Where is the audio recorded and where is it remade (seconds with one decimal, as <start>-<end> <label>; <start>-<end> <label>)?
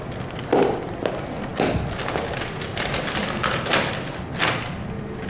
0.0-5.3 recorded